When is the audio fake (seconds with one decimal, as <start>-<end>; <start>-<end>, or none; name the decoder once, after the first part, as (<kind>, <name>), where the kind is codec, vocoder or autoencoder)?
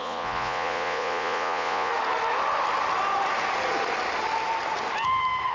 0.0-1.9 (vocoder, Vocos)